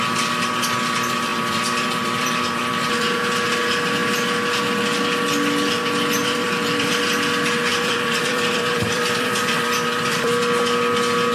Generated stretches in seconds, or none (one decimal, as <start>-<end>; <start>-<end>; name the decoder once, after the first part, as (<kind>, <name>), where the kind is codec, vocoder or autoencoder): 1.3-2.7 (vocoder, BigVGAN v2); 6.2-7.0; 7.7-10.3